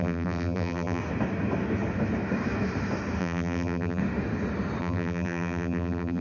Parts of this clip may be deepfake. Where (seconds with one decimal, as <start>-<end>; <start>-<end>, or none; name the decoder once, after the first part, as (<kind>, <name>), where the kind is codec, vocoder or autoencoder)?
0.0-1.0 (vocoder, BigVGAN v2); 3.2-4.0; 4.8-6.2